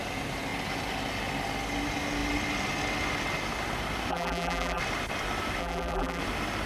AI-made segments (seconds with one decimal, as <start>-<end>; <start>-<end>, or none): 4.1-4.8; 5.6-6.2